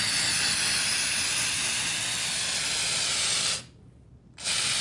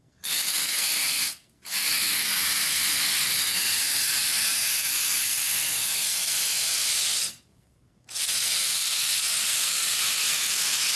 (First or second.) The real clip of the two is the first